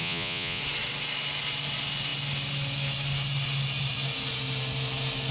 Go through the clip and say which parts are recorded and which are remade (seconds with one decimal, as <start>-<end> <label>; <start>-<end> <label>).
0.0-0.6 remade; 0.6-5.3 recorded